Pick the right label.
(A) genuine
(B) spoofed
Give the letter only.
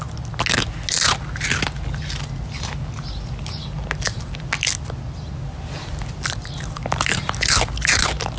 A